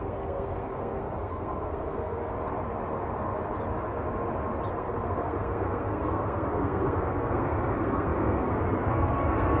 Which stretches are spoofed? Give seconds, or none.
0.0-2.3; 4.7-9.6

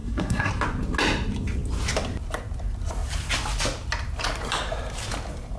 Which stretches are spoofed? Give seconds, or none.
0.0-0.5